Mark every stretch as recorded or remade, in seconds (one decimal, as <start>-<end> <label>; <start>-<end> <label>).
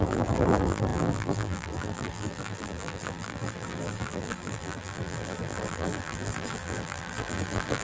0.0-7.8 remade